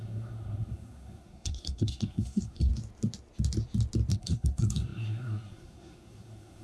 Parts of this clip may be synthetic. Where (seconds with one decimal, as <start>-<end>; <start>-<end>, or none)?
0.0-2.7; 4.1-6.6